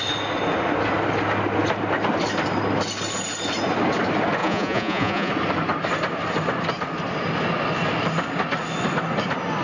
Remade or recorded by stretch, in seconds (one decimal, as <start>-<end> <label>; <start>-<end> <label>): 0.0-4.4 recorded; 4.4-5.3 remade; 5.3-9.6 recorded